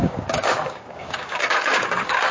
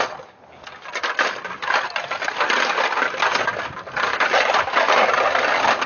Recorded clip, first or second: second